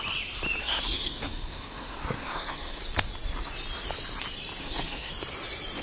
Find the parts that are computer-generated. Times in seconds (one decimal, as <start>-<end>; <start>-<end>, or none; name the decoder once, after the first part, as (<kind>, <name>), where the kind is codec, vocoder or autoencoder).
0.6-2.8 (codec, SNAC); 4.6-5.1